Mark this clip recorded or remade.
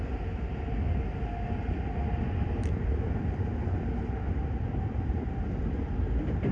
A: recorded